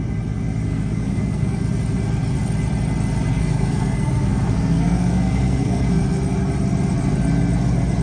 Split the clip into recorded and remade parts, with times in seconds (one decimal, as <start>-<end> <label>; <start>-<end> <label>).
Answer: 0.0-0.7 recorded; 0.7-1.6 remade; 1.6-3.3 recorded; 3.3-6.2 remade; 6.2-8.0 recorded